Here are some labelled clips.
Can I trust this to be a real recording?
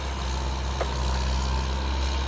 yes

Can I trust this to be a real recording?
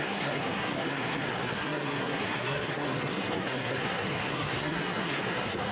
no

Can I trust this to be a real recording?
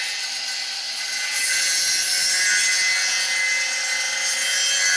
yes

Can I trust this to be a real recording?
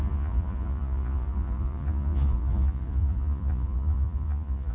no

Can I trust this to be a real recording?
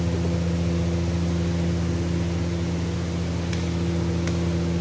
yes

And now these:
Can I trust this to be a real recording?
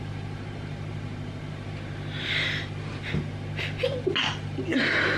yes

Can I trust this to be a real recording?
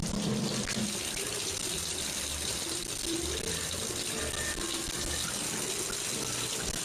yes